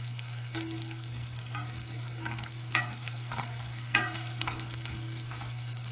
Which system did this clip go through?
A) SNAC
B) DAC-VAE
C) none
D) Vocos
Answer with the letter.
A